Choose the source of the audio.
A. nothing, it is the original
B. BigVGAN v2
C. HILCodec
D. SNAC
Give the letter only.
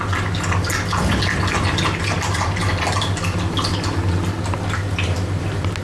A